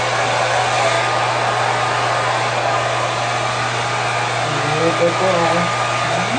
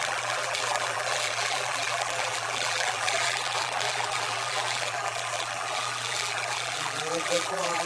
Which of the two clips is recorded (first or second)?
first